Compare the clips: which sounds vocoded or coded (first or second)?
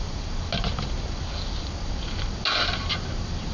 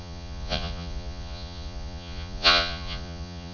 second